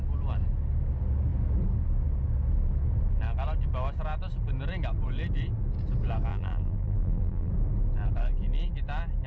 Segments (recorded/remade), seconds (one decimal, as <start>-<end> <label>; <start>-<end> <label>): 0.0-6.3 recorded; 6.3-7.5 remade; 7.5-9.3 recorded